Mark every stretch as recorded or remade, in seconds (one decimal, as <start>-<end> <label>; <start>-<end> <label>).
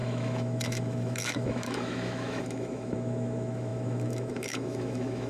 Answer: 0.0-5.3 remade